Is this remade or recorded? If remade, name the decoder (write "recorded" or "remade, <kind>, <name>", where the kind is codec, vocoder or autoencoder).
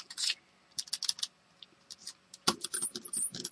recorded